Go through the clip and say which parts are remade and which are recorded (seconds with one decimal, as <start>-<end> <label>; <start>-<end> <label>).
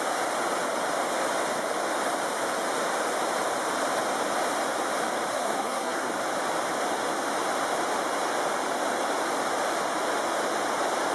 0.0-5.3 recorded; 5.3-6.1 remade; 6.1-11.1 recorded